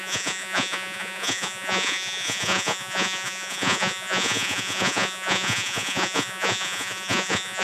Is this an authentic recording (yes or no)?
no